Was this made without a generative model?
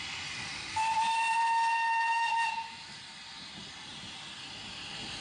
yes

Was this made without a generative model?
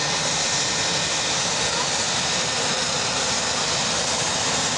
yes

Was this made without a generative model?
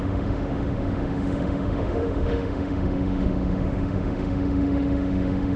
no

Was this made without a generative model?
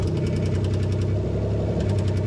yes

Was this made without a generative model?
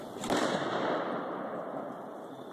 yes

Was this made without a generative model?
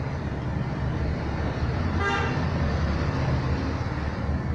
yes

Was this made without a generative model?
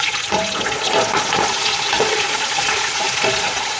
no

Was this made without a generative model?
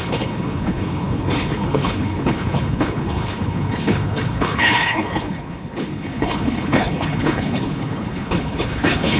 no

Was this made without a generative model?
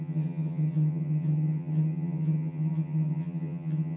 no